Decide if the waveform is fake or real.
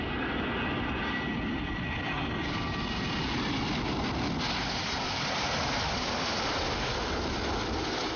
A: real